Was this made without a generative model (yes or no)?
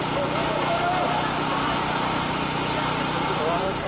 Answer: yes